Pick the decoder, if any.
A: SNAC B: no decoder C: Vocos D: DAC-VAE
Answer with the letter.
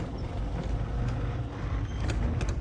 B